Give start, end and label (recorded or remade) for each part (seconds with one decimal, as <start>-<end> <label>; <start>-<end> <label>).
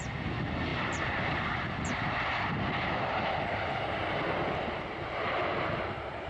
0.0-6.3 recorded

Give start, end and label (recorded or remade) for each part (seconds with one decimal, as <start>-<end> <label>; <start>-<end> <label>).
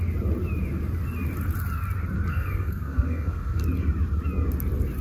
0.0-2.3 recorded; 2.3-3.6 remade; 3.6-5.0 recorded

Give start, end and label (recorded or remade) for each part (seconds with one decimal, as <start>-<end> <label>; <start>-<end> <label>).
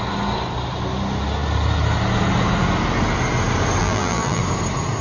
0.0-3.8 recorded; 3.8-4.4 remade; 4.4-5.0 recorded